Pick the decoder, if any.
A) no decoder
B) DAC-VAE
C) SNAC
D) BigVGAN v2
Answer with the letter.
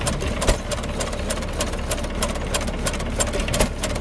A